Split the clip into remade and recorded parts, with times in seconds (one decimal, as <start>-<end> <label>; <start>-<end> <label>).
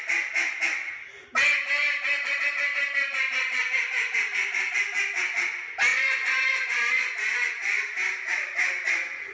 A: 0.0-5.9 recorded; 5.9-7.8 remade; 7.8-9.3 recorded